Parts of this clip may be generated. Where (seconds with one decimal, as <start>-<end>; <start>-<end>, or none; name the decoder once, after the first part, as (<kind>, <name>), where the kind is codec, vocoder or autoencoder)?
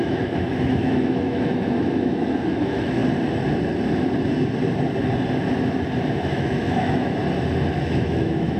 0.0-3.0 (autoencoder, DAC-VAE); 6.1-7.2; 7.8-8.6